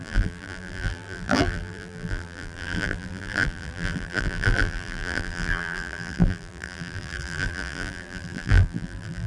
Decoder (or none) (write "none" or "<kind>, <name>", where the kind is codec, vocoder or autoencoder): vocoder, BigVGAN v2